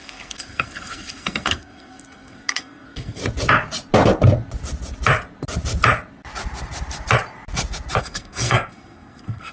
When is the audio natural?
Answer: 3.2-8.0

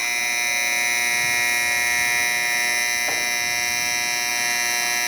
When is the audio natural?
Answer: 0.0-5.1

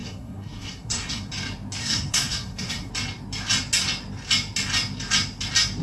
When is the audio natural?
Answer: 1.3-1.8; 2.9-5.8

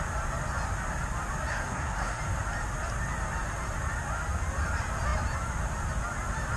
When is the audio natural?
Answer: 0.0-1.5; 2.2-6.6

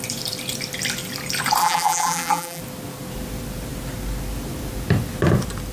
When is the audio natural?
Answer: 0.0-1.6; 2.6-5.7

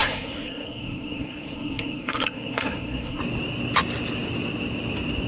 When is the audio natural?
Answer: 3.2-5.3

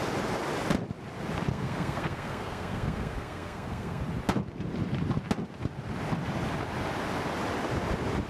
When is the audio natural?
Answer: 0.0-1.5; 4.0-8.3

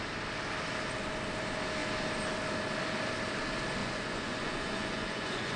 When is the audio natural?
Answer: 0.0-3.8